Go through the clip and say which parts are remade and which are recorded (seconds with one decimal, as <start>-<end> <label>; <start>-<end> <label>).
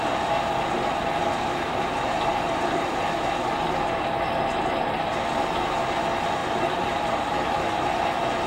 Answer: 0.0-6.4 recorded; 6.4-8.0 remade; 8.0-8.5 recorded